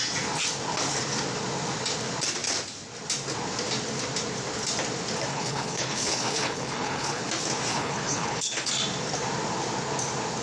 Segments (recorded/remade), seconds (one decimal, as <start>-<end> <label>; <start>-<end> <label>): 0.0-5.3 recorded; 5.3-7.2 remade; 7.2-7.7 recorded; 7.7-8.7 remade; 8.7-10.4 recorded